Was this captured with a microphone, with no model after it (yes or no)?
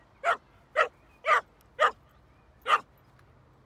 yes